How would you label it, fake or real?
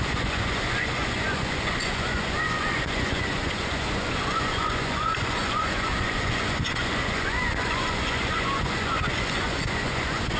fake